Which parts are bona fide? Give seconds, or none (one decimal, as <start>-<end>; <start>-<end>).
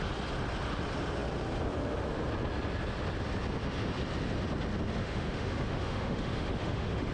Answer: 0.0-5.0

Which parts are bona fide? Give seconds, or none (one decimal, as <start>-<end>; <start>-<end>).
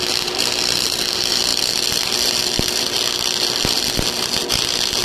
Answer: 0.0-5.0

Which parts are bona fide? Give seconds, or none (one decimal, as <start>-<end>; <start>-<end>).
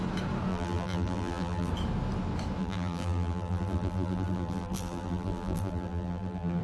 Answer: 0.0-0.5; 1.7-2.6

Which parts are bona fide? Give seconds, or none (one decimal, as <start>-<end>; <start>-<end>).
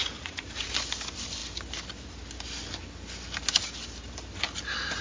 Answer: 0.7-5.0